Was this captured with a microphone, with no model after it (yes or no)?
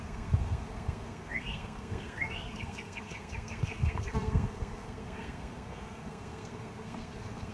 no